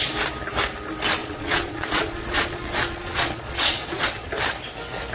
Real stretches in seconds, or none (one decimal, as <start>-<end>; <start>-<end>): 0.0-1.2; 4.3-5.1

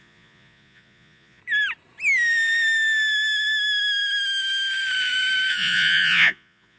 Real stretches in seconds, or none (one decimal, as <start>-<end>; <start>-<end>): 1.4-5.5

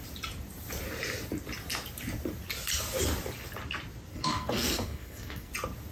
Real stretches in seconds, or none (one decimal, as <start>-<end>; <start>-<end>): 0.0-4.1; 5.5-5.9

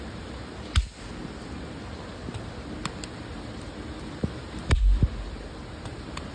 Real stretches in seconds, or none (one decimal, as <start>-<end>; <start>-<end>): 0.0-6.3

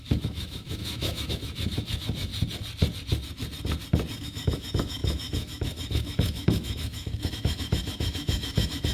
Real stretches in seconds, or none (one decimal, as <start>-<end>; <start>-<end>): 2.3-4.2

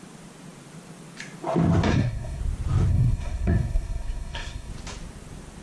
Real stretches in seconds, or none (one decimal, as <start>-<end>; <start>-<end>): 0.0-1.9; 2.4-2.9; 4.7-5.6